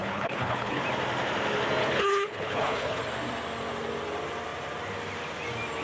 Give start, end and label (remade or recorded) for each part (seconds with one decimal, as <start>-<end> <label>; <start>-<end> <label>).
0.0-0.8 remade; 0.8-1.8 recorded; 1.8-3.0 remade; 3.0-5.8 recorded